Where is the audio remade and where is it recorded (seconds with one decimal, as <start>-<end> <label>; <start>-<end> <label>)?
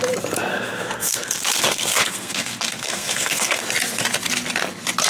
0.0-0.5 recorded; 0.5-3.6 remade; 3.6-5.1 recorded